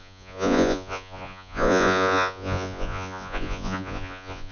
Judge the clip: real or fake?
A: fake